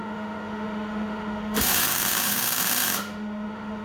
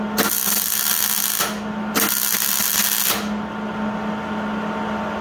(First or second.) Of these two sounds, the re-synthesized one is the first